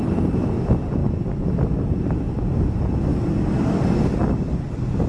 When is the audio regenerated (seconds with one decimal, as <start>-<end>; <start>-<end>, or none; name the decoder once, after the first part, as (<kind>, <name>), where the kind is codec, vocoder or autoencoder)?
none